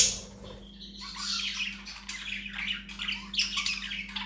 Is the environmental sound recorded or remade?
recorded